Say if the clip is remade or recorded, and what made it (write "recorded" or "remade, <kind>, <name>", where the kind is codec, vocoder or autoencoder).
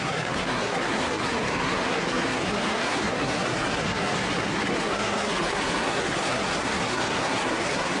remade, codec, SNAC